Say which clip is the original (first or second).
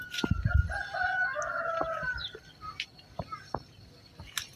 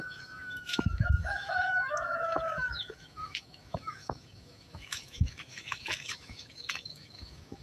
first